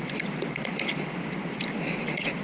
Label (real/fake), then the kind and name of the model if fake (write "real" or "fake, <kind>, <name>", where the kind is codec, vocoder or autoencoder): real